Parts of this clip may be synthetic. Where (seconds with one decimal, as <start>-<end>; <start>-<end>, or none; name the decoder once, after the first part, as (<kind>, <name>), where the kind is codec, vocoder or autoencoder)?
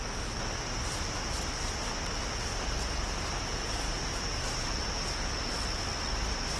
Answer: 2.5-4.9 (vocoder, BigVGAN v2)